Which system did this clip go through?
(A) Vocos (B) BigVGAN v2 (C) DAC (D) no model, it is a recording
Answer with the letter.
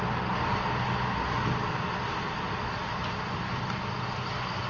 D